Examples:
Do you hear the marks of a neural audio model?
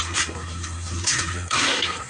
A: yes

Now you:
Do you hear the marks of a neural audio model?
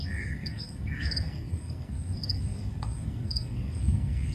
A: yes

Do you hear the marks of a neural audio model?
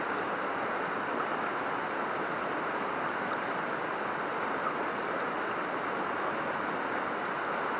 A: no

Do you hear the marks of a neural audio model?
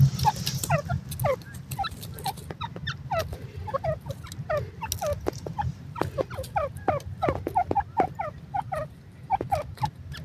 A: no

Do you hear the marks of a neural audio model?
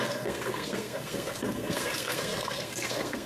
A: yes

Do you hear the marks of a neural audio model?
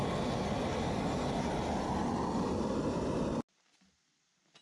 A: no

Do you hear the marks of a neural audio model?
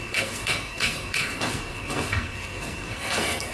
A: yes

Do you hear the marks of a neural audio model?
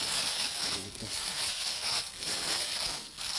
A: yes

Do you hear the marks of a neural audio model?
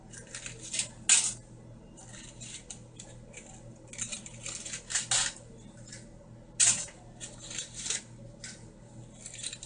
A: no